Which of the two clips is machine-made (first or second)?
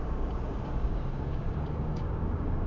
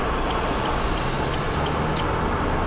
first